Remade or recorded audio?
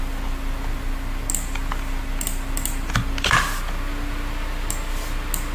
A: recorded